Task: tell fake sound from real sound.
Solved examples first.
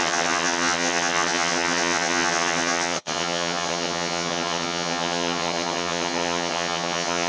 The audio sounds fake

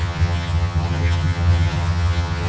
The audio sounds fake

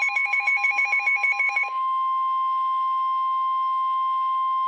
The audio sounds fake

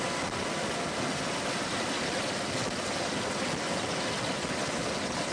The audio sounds real